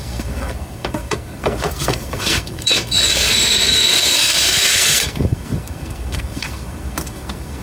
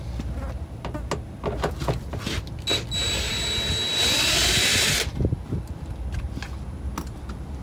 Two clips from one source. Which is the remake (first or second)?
first